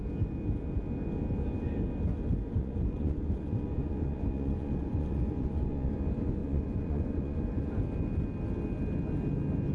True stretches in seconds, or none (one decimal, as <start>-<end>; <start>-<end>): 0.0-2.4; 5.9-6.4; 7.4-9.7